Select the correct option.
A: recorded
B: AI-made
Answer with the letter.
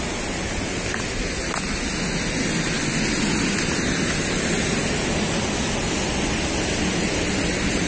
A